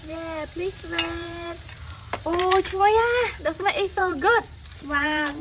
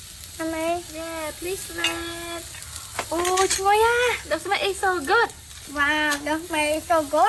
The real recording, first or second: second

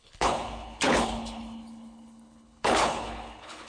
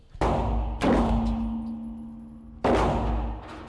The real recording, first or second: second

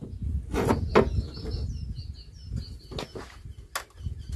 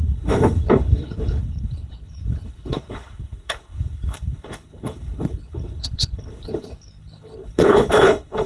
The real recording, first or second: first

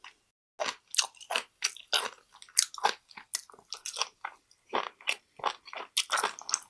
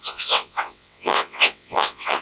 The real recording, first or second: first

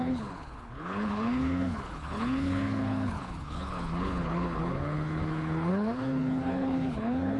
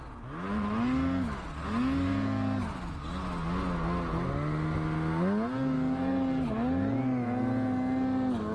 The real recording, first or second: second